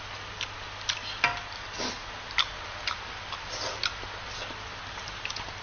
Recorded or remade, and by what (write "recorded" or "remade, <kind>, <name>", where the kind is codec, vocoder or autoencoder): recorded